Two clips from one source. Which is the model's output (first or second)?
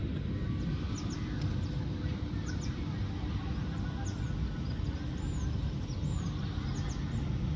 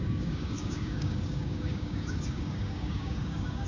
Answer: second